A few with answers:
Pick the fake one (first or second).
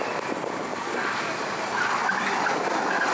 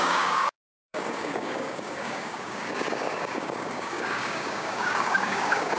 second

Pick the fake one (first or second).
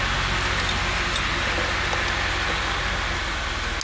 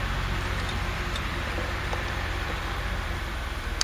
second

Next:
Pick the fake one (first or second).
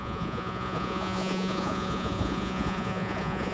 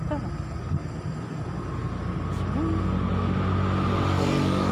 first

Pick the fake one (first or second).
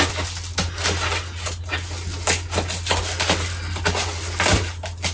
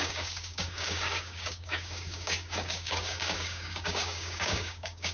second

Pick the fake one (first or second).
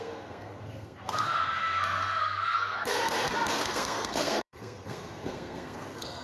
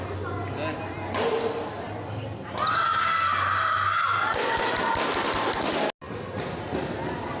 first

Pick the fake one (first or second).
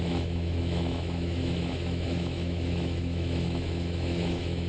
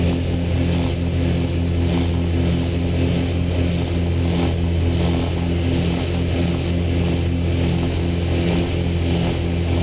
first